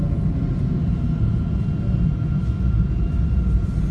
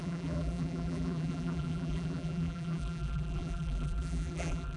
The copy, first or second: second